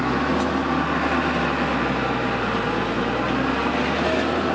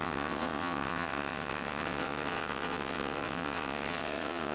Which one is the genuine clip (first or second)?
first